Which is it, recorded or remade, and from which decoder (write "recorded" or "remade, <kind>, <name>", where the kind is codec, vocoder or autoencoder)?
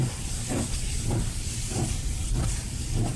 remade, vocoder, BigVGAN v2